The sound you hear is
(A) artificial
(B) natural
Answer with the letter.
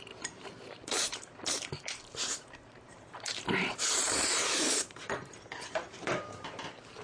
A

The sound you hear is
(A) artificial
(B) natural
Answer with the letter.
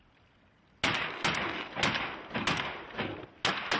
B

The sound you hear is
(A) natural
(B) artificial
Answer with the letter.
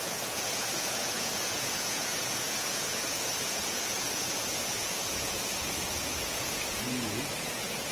B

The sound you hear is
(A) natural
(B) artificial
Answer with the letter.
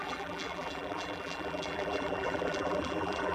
B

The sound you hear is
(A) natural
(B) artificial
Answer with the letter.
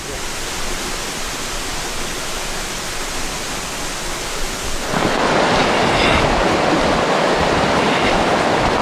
A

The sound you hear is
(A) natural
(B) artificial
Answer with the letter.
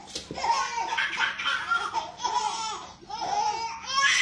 A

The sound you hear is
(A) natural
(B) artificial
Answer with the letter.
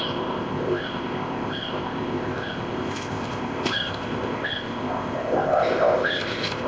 B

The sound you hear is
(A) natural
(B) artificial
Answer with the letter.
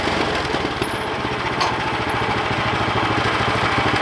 A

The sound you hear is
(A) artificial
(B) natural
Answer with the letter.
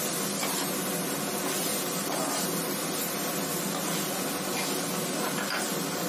B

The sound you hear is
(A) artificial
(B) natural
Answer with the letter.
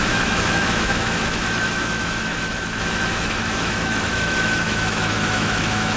A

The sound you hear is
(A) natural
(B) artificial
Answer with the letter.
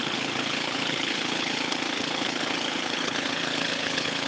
B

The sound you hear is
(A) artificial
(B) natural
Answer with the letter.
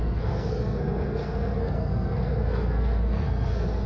A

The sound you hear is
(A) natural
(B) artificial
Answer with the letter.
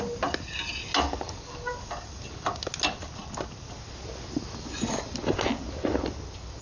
A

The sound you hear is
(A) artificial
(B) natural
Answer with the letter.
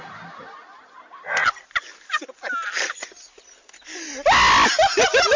B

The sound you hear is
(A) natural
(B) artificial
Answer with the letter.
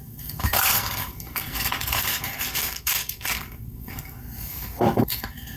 B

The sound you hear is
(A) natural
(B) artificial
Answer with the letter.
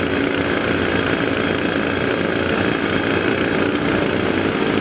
A